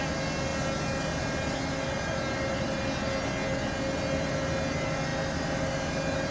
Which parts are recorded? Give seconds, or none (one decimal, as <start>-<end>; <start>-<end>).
0.0-6.3